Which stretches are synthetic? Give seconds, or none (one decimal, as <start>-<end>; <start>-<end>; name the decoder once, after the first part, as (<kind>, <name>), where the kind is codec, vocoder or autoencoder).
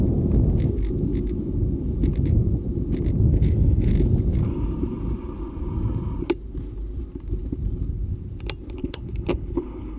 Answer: 3.3-3.9 (codec, HILCodec); 8.8-10.0